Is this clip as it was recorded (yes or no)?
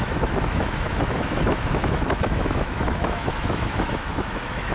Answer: no